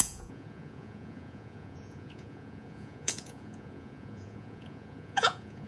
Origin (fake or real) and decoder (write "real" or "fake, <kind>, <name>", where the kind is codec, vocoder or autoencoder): fake, vocoder, Vocos